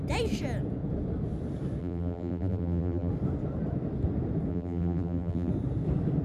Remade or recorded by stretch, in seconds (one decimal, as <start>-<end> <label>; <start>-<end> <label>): 0.0-1.8 recorded; 1.8-3.1 remade; 3.1-4.5 recorded; 4.5-5.5 remade; 5.5-6.2 recorded